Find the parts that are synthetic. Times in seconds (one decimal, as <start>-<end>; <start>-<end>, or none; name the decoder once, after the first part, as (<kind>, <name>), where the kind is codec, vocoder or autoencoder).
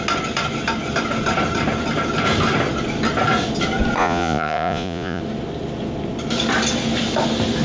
4.0-5.2 (vocoder, Vocos)